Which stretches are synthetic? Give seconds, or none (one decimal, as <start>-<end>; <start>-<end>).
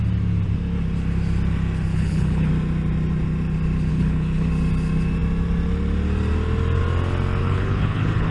1.9-2.5; 3.9-4.5; 7.4-8.3